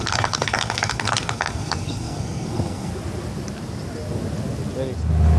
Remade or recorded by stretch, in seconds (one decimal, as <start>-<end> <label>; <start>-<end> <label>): 0.0-2.9 remade; 2.9-5.4 recorded